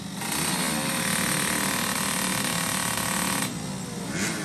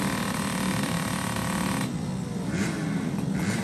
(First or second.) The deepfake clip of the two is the second